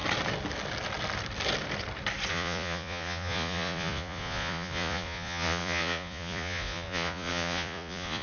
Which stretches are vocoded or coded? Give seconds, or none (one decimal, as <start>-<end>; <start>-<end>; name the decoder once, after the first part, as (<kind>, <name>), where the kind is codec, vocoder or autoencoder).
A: 2.3-8.2 (vocoder, Vocos)